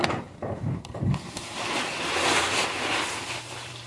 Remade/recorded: remade